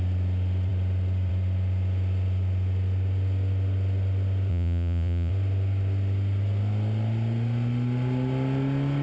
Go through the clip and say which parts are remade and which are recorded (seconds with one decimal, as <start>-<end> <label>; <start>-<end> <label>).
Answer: 0.0-4.5 recorded; 4.5-5.3 remade; 5.3-9.0 recorded